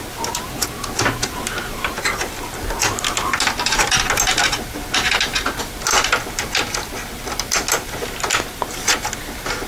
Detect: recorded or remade recorded